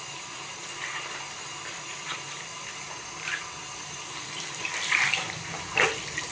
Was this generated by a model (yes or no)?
no